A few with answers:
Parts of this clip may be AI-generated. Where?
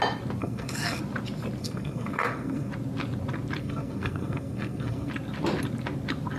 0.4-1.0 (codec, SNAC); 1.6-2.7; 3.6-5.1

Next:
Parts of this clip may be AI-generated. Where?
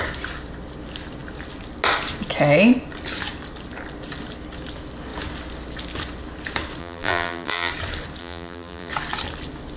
6.8-7.7 (vocoder, BigVGAN v2); 8.2-8.9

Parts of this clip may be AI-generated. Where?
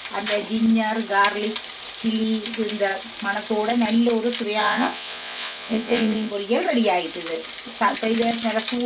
4.6-6.3 (vocoder, Vocos)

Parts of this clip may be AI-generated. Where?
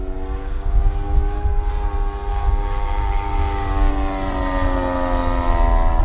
0.4-1.7 (codec, DAC); 2.3-3.9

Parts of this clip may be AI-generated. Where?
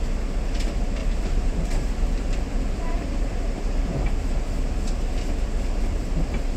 1.0-4.2 (vocoder, BigVGAN v2)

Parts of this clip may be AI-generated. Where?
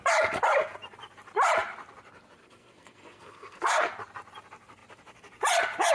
2.4-3.9 (codec, SNAC)